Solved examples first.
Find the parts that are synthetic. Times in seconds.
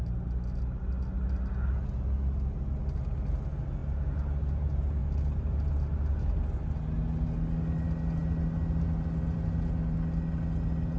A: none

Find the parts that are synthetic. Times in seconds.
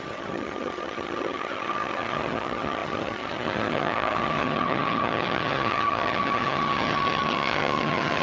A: 0.0-8.2 (vocoder, HiFi-GAN)